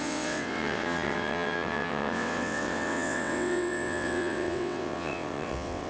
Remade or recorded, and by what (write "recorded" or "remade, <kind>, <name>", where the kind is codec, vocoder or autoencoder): remade, vocoder, WaveNeXt